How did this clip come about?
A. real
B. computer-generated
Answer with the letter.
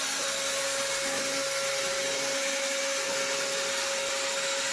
A